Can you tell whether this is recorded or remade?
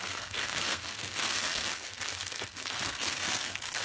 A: remade